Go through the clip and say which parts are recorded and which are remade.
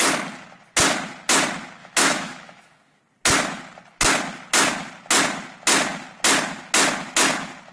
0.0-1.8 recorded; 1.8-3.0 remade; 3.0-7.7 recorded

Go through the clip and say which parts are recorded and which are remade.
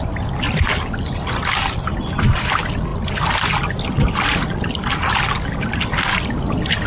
0.0-6.9 recorded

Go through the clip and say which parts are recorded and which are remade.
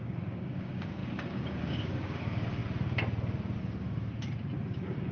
0.0-2.6 remade; 2.6-3.6 recorded; 3.6-4.1 remade; 4.1-4.6 recorded; 4.6-5.1 remade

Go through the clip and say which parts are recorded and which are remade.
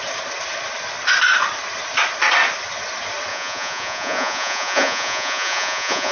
0.0-3.3 recorded; 3.3-6.1 remade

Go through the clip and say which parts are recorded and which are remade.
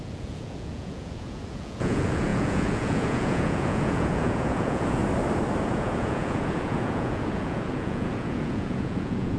0.0-5.0 remade; 5.0-5.6 recorded; 5.6-9.4 remade